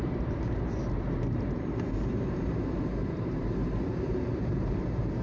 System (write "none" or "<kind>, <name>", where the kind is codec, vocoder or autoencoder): vocoder, BigVGAN v2